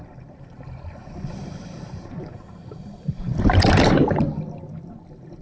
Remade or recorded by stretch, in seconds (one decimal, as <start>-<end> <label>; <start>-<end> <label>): 0.0-1.0 recorded; 1.0-4.2 remade; 4.2-5.4 recorded